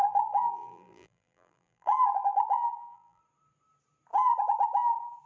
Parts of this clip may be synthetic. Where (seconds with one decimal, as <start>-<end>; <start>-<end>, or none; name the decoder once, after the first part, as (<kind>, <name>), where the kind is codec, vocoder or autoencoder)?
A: 0.0-3.2 (vocoder, BigVGAN v2)